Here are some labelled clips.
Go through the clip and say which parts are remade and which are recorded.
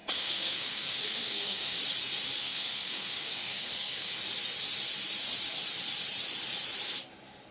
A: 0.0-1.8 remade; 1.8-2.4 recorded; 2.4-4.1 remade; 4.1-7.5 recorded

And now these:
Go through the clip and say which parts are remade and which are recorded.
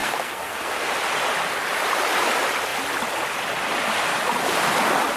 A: 0.0-0.9 remade; 0.9-5.2 recorded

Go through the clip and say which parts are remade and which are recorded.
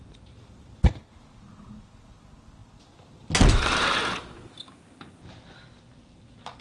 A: 0.0-6.6 recorded